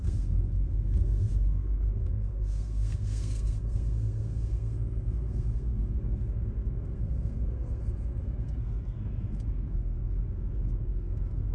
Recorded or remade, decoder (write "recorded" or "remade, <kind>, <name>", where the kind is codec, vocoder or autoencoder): remade, codec, SNAC